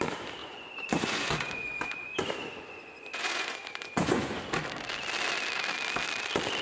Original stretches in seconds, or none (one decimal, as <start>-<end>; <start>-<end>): 0.0-0.4; 4.4-6.6